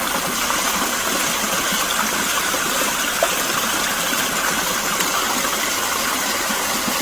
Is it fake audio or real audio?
real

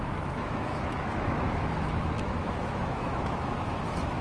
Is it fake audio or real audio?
fake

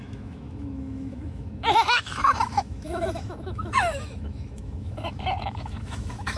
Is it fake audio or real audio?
fake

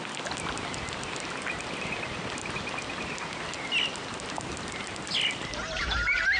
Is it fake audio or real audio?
real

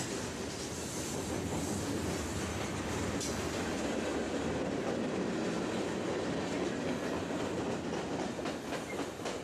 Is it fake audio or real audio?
real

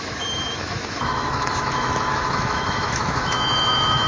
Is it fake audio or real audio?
fake